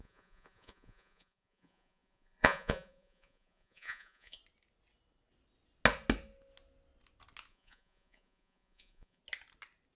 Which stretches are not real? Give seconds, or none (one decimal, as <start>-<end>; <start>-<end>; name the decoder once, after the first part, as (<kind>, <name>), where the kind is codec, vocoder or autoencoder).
0.0-4.4 (vocoder, Vocos); 7.5-9.2